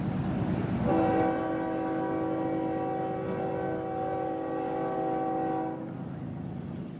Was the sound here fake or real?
real